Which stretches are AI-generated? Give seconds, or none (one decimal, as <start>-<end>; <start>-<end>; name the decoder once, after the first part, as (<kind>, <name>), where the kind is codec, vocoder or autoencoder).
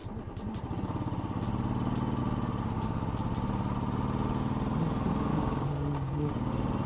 5.3-6.5 (codec, DAC)